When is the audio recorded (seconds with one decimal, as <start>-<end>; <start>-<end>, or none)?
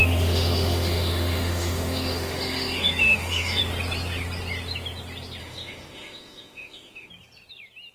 3.6-5.4; 7.1-7.9